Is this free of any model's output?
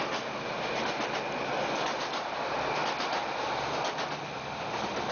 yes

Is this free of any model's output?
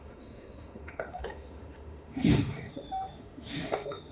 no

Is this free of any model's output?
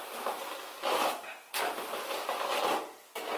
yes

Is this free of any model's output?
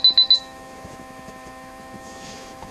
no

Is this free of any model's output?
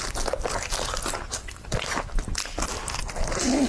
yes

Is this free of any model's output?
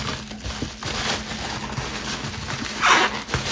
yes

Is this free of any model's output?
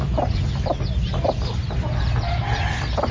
yes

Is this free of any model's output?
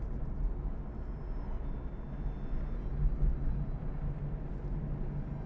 yes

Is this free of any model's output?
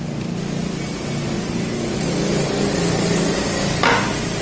yes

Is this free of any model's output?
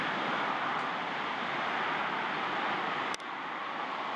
yes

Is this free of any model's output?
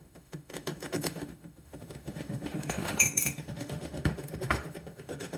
no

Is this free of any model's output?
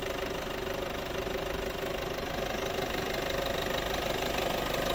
yes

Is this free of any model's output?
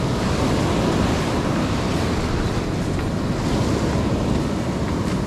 yes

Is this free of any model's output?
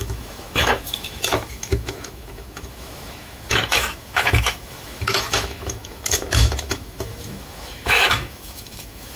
no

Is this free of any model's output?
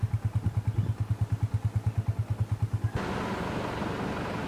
yes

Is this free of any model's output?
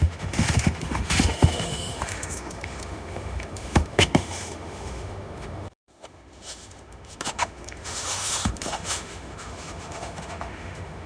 no